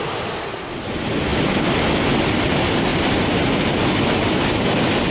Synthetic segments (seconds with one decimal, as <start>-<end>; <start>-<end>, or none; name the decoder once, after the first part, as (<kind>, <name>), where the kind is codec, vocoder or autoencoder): none